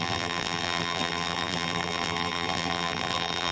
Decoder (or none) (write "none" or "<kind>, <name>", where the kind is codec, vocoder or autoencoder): vocoder, BigVGAN v2